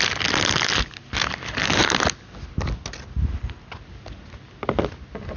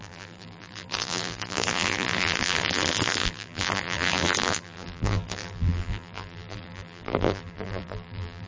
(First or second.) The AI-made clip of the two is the second